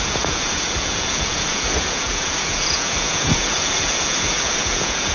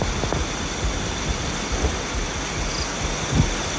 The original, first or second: second